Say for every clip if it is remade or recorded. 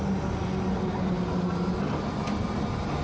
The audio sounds recorded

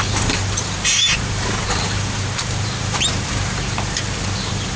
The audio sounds remade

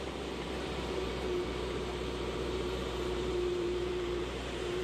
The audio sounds remade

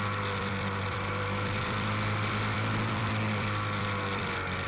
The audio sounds remade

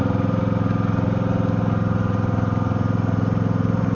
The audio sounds recorded